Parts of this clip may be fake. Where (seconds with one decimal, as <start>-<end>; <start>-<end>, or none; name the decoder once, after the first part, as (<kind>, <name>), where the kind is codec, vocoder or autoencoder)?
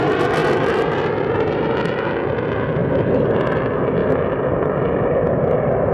none